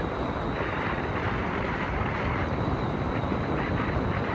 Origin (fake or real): fake